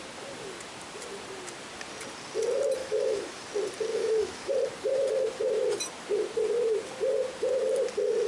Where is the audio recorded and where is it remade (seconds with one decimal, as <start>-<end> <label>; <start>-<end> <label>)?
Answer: 0.0-2.8 recorded; 2.8-3.5 remade; 3.5-3.9 recorded; 3.9-4.5 remade; 4.5-8.3 recorded